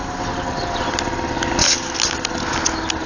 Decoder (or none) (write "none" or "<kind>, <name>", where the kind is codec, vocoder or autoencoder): none